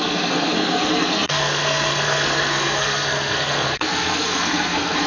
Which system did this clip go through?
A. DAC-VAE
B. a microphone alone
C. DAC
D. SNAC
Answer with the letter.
D